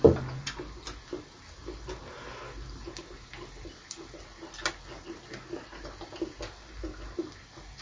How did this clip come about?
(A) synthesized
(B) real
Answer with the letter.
B